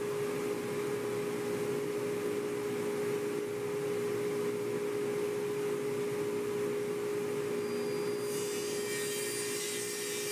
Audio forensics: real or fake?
real